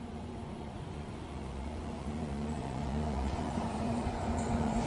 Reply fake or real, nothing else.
fake